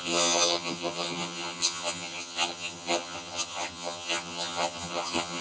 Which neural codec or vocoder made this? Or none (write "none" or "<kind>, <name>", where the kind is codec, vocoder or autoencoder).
vocoder, HiFi-GAN